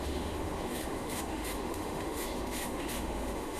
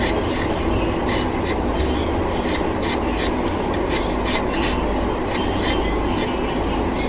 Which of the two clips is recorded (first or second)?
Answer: second